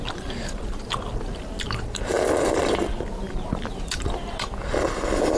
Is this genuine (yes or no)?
yes